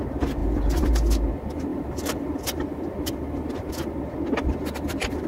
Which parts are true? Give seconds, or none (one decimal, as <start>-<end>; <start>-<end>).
0.0-0.4; 0.9-1.7; 3.7-5.3